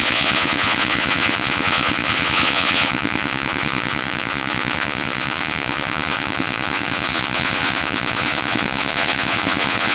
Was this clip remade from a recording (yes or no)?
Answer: yes